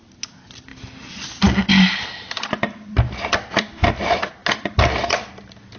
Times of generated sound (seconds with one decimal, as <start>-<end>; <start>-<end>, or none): none